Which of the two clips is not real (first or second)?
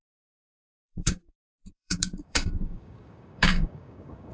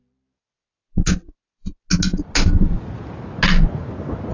first